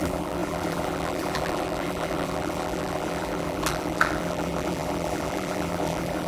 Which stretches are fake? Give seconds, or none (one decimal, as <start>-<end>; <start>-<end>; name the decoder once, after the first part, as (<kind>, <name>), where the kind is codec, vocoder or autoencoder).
0.0-6.3 (vocoder, BigVGAN v2)